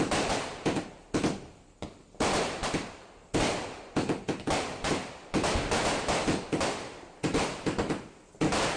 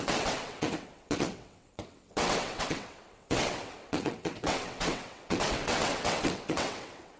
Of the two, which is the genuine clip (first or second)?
first